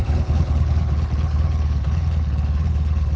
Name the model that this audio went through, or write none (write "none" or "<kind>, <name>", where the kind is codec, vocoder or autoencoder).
codec, HILCodec